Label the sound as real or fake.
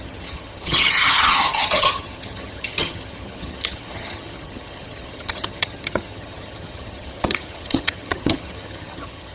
fake